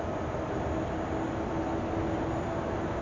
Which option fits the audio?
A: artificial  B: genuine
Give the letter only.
B